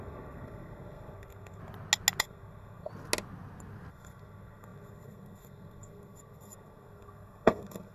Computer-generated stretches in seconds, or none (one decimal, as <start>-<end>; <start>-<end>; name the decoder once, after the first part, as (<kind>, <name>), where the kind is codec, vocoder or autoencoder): 0.0-1.6 (codec, SNAC); 2.2-2.9; 3.9-7.9